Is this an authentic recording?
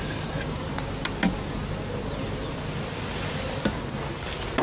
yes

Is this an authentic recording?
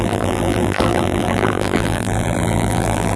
no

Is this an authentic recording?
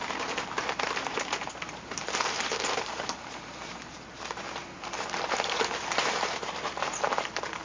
no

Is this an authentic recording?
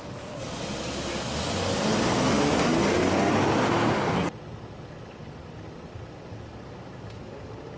yes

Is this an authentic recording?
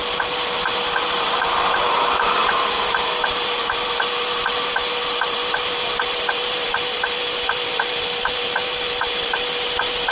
no